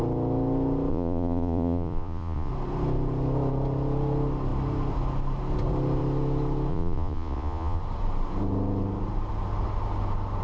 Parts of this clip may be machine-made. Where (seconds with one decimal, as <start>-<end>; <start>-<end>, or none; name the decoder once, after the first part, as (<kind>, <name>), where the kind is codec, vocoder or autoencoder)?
0.9-2.5 (vocoder, Vocos); 6.7-7.8

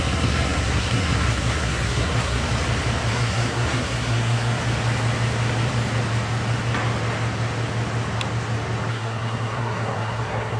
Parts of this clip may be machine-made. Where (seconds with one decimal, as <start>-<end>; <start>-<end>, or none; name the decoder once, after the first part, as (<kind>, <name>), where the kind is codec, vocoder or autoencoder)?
0.0-2.4 (codec, SNAC); 3.1-4.6; 8.9-10.6

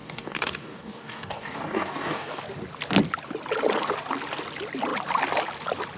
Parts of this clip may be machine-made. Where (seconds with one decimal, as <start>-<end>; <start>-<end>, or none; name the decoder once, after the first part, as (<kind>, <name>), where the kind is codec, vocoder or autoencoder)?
0.0-2.4 (codec, DAC)

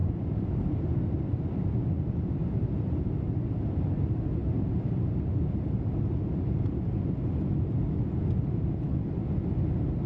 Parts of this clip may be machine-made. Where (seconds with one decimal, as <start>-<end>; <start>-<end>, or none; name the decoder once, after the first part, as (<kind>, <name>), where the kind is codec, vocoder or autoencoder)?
0.0-0.9 (vocoder, BigVGAN v2); 2.4-3.1

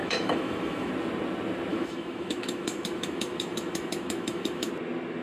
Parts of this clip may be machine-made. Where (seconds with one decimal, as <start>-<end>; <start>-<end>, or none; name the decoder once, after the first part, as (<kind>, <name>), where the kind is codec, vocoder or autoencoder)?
0.0-0.9 (autoencoder, DAC-VAE); 1.7-4.7

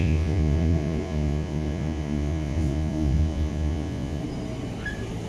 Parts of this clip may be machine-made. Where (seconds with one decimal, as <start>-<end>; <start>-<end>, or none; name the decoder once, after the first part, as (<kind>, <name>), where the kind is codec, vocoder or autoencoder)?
0.0-4.2 (vocoder, Vocos)

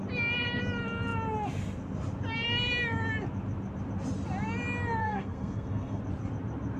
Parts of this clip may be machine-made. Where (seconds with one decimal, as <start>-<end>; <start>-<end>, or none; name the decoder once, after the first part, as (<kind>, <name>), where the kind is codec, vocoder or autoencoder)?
5.0-6.0 (codec, SNAC)

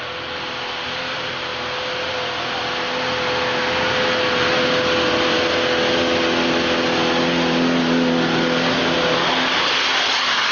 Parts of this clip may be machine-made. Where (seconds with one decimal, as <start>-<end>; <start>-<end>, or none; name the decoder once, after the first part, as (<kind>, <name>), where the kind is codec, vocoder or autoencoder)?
none